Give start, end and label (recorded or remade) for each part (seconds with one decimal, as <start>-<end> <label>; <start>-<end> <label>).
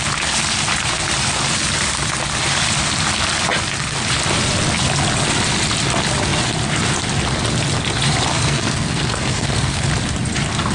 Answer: 0.0-8.3 recorded; 8.3-9.9 remade; 9.9-10.7 recorded